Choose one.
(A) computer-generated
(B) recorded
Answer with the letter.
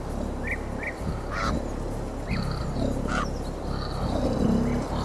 B